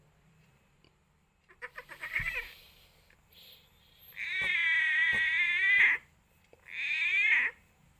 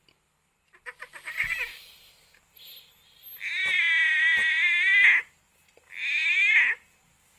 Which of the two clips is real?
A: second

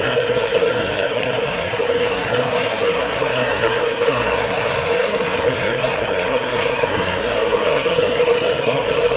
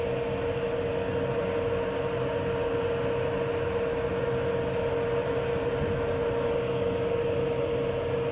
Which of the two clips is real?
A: second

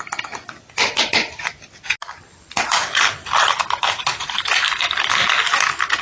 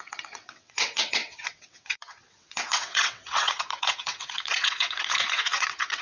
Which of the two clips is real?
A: first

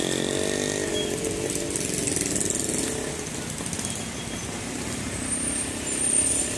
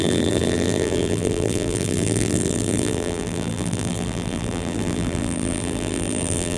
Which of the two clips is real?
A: first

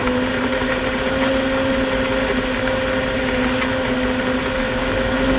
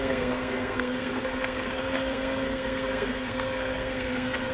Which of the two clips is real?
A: first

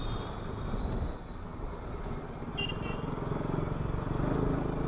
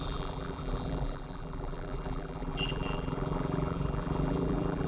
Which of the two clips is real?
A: first